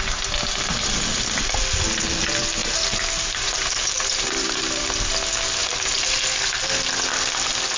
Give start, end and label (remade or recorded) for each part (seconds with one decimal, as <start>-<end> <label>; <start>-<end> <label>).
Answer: 0.0-2.6 recorded; 2.6-4.8 remade; 4.8-5.6 recorded; 5.6-6.2 remade; 6.2-7.8 recorded